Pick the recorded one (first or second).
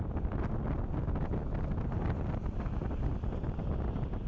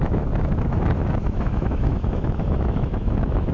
first